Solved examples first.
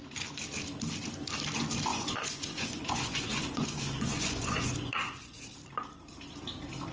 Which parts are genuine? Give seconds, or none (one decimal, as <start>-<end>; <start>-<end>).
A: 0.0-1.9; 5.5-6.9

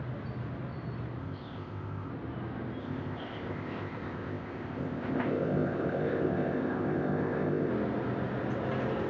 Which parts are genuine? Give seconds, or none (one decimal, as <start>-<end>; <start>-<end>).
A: 0.0-1.2; 2.1-2.8; 7.7-9.1

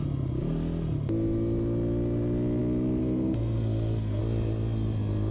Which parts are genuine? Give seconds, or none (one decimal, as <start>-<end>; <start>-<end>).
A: 0.0-3.0; 4.2-5.3